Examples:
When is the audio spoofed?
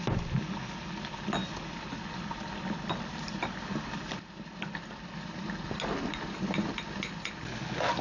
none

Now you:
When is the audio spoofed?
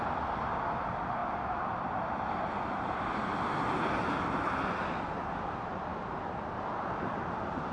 none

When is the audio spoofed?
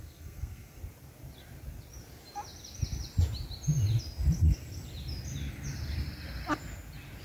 0.0-0.8 (codec, SNAC)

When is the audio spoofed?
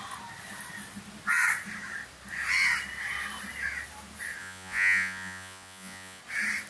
4.4-6.2 (vocoder, Vocos)